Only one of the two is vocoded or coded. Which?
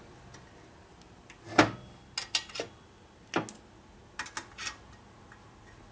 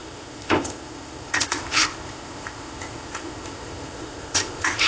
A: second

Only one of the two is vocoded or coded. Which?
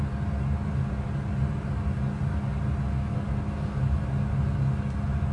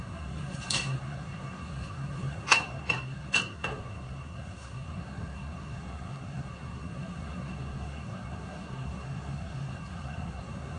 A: second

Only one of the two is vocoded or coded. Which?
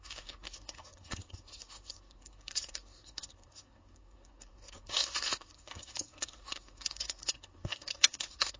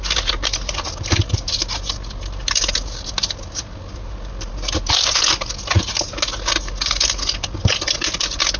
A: first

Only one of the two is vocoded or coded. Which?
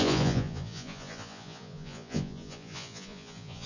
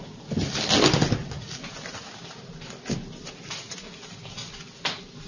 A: first